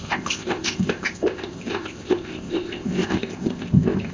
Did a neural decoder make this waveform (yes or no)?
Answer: yes